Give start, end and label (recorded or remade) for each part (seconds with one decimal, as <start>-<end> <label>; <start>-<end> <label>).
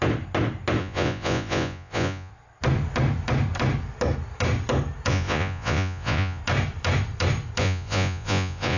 0.0-0.8 recorded; 0.8-2.3 remade; 2.3-5.1 recorded; 5.1-6.4 remade; 6.4-7.6 recorded; 7.6-8.8 remade